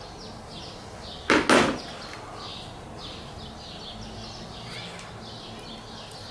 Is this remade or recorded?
recorded